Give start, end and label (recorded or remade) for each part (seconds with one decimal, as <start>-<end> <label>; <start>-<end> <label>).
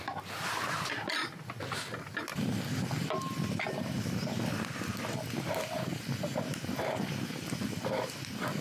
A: 0.0-8.6 recorded